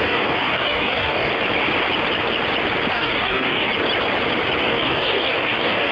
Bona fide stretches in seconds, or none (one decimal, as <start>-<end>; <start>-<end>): 1.3-2.9; 3.7-4.6